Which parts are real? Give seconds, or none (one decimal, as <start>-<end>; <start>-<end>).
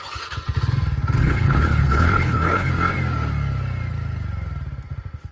0.0-1.2; 2.7-5.3